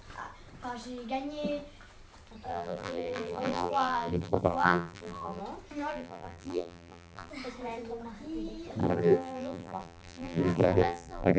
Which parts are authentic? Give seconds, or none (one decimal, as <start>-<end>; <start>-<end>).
0.0-2.5; 5.4-5.9; 7.3-8.8